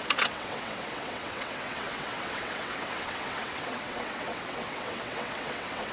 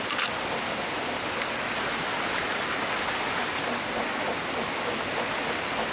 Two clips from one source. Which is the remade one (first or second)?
first